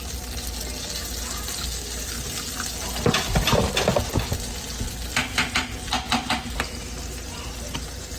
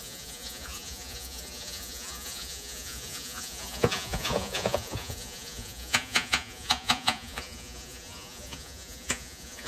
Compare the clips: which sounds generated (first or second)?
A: second